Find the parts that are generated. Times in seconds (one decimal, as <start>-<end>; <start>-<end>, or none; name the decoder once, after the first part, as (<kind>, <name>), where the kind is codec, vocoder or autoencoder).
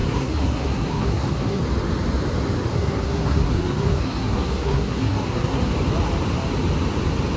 0.0-1.6 (codec, SNAC); 2.7-5.7